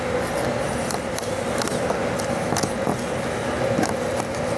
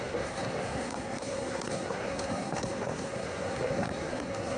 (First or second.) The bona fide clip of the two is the first